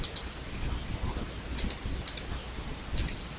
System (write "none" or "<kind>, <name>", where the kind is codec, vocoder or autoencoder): none